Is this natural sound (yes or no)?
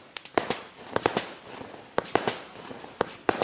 yes